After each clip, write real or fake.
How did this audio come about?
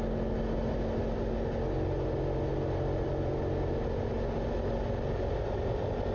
real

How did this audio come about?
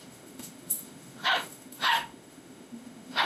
fake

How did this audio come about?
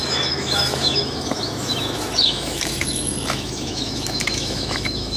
fake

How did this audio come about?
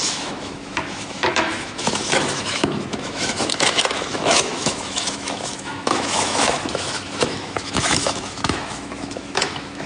fake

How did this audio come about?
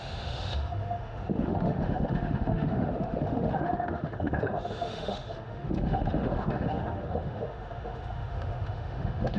fake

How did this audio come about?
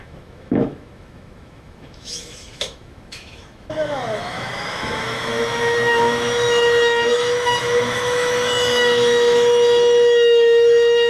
fake